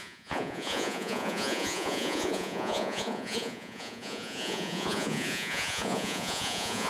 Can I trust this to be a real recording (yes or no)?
no